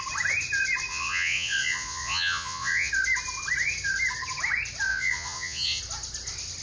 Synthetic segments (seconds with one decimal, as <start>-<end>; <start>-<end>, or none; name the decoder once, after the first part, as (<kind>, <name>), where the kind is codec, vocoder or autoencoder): 0.9-2.9 (vocoder, Vocos); 4.9-5.8